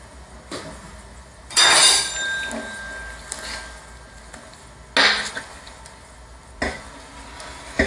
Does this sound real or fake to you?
real